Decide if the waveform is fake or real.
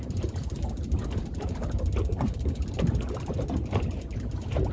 fake